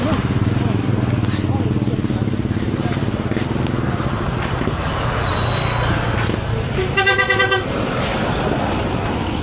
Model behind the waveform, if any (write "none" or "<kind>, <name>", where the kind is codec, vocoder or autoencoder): none